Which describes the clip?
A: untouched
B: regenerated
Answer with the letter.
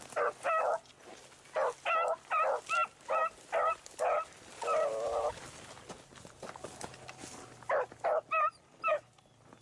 A